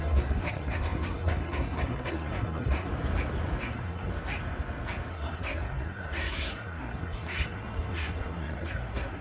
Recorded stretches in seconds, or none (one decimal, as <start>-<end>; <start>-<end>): 2.9-3.6; 4.1-5.1